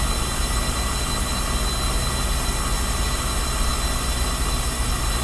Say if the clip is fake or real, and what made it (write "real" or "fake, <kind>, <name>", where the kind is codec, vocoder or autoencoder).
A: real